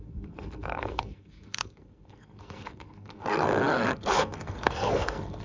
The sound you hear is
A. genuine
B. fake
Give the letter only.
B